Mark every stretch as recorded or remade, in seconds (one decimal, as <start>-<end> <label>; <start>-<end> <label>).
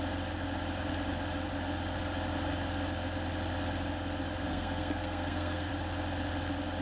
0.0-4.5 recorded; 4.5-5.7 remade; 5.7-6.8 recorded